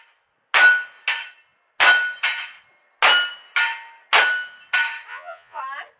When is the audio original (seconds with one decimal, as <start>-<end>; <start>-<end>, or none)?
0.0-5.1; 5.6-6.0